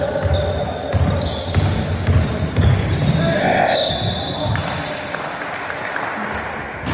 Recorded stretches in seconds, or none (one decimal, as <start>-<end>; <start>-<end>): 0.0-3.4; 3.9-6.9